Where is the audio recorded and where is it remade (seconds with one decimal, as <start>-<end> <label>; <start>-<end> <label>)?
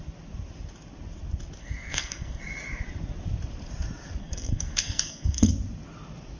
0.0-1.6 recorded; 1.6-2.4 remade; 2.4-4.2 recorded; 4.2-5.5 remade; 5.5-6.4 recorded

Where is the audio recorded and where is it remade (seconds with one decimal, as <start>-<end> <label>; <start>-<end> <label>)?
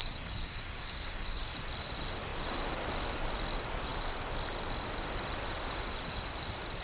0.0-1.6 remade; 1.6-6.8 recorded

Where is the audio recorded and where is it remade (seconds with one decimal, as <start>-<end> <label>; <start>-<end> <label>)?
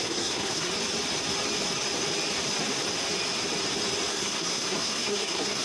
0.0-0.7 remade; 0.7-4.1 recorded; 4.1-5.6 remade